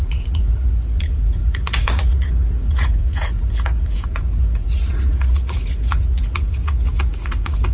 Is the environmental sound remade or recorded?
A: remade